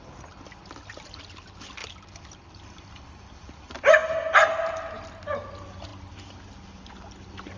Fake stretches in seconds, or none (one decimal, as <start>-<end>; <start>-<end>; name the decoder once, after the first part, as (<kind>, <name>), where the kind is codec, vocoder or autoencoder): none

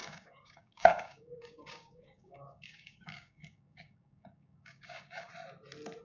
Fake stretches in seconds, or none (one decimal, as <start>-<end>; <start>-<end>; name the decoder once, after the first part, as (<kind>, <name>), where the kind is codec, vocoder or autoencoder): 0.0-5.3 (codec, DAC)

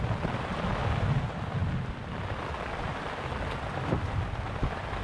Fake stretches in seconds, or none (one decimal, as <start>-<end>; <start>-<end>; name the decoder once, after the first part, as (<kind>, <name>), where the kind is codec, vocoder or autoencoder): none

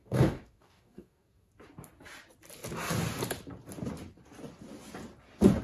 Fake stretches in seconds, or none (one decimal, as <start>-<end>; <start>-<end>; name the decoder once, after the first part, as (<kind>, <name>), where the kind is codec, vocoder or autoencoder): 0.0-1.5 (codec, DAC)

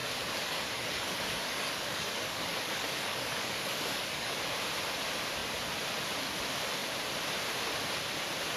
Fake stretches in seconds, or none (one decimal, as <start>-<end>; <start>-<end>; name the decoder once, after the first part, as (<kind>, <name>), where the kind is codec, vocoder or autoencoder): 0.0-4.4 (codec, DAC)

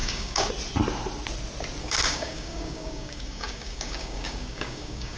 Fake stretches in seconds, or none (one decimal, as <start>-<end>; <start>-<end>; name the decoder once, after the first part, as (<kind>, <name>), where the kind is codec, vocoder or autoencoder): 0.0-0.5 (codec, DAC); 1.8-5.2

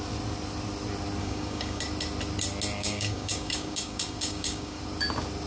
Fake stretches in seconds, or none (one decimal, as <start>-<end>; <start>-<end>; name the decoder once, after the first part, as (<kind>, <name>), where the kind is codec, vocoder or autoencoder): 1.2-1.8 (codec, DAC); 2.8-4.8